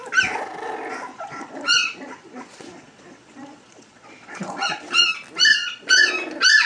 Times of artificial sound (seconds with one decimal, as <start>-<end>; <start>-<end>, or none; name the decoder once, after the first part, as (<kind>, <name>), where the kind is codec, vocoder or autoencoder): 1.1-5.1 (vocoder, Vocos); 5.5-6.1